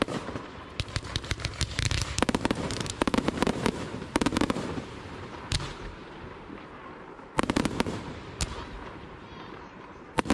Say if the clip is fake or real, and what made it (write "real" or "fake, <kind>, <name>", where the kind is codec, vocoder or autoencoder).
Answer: fake, vocoder, BigVGAN v2